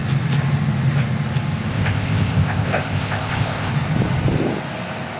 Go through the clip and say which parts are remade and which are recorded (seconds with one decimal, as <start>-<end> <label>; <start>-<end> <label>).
0.0-1.7 recorded; 1.7-3.7 remade; 3.7-5.2 recorded